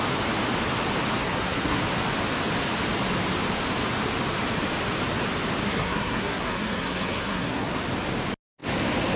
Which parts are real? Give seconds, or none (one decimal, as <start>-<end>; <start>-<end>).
0.0-1.2; 1.8-5.6; 7.8-9.2

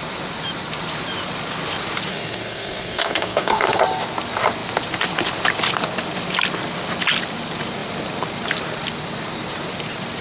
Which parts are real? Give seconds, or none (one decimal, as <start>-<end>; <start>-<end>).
0.0-2.1; 3.8-10.2

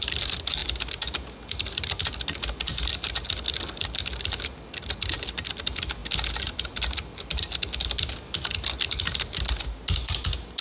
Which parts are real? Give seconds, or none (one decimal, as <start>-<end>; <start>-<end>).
0.0-10.6

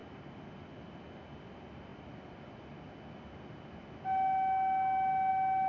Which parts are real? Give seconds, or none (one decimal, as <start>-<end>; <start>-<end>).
0.0-5.7

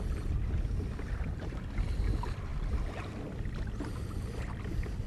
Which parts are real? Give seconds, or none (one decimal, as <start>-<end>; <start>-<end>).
0.0-5.1

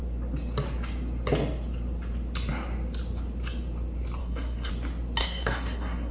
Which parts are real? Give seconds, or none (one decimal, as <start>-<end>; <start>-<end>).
0.0-4.2; 4.7-5.2

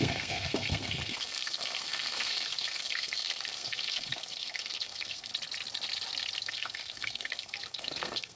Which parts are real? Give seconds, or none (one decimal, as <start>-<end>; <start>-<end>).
5.3-6.4